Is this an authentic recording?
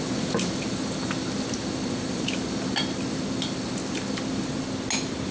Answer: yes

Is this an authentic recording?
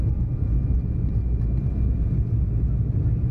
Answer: yes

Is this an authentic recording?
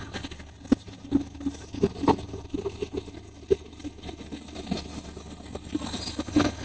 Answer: yes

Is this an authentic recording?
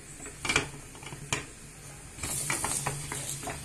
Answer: yes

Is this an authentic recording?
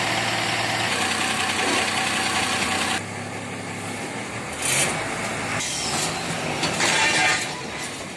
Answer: yes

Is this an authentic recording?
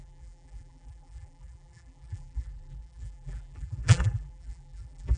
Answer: no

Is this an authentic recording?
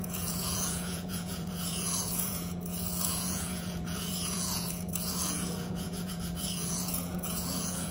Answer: no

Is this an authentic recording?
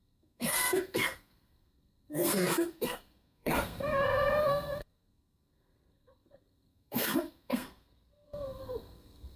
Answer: no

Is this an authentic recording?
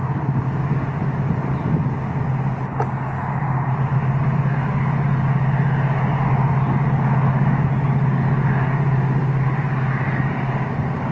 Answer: yes